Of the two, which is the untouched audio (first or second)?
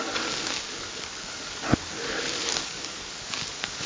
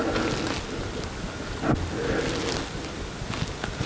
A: second